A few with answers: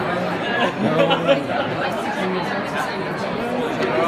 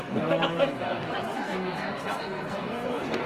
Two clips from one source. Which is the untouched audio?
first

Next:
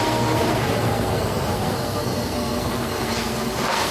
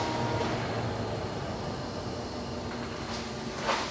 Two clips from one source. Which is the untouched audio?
second